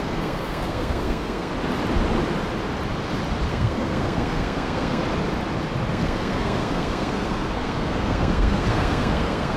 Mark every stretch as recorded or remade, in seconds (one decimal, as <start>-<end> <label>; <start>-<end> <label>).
0.0-1.5 remade; 1.5-3.5 recorded; 3.5-5.0 remade; 5.0-5.9 recorded; 5.9-9.6 remade